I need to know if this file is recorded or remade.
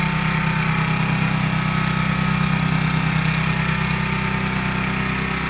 recorded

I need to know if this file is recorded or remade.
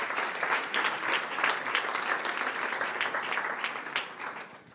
recorded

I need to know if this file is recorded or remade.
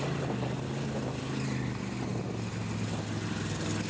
recorded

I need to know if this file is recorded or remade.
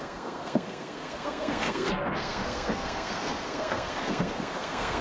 remade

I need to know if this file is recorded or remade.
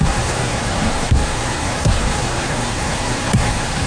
remade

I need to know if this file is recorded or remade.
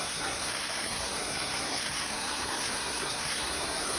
remade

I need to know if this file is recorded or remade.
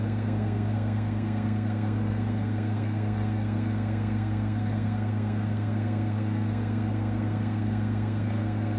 remade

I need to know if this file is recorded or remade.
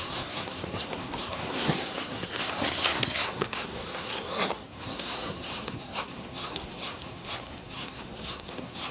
remade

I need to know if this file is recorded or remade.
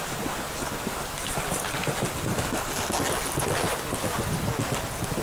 recorded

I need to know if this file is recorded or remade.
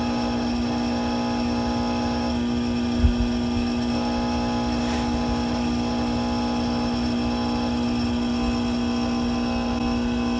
recorded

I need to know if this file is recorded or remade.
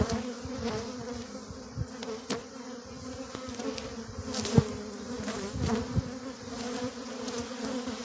recorded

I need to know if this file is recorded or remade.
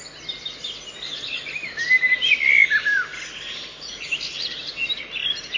recorded